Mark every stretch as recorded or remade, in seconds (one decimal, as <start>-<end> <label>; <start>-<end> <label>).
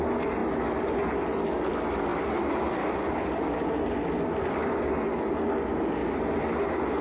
0.0-2.1 recorded; 2.1-4.9 remade; 4.9-6.0 recorded; 6.0-6.6 remade; 6.6-7.0 recorded